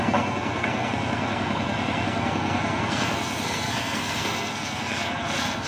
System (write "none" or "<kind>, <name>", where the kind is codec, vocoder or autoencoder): codec, SNAC